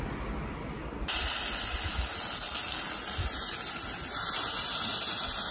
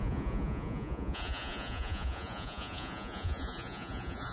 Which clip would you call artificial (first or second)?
second